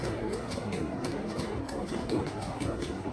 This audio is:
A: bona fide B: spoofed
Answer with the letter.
B